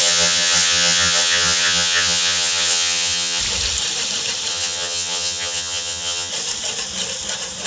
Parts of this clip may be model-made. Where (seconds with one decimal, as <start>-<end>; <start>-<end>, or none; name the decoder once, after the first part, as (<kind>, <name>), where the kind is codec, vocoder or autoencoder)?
0.0-3.4 (vocoder, HiFi-GAN); 4.5-6.3